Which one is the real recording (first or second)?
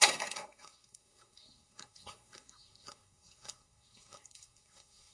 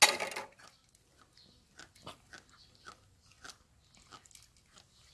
second